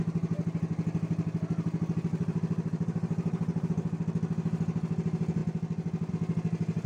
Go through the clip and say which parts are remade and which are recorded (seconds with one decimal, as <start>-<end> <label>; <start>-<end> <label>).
0.0-2.1 recorded; 2.1-3.7 remade; 3.7-6.9 recorded